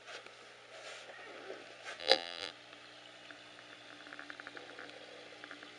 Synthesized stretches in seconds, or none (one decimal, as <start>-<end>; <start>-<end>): 2.0-2.5